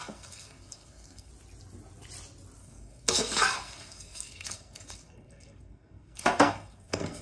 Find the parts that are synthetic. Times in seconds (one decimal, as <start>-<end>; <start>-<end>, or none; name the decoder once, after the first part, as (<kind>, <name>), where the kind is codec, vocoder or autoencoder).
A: 0.0-1.3 (codec, SNAC); 2.6-7.2